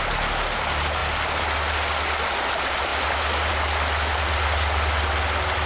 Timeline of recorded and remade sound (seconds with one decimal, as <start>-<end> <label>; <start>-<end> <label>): 0.0-5.7 recorded